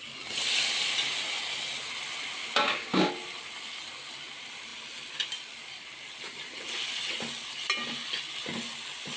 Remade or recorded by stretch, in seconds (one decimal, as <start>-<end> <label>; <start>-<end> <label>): 0.0-2.4 recorded; 2.4-3.1 remade; 3.1-9.2 recorded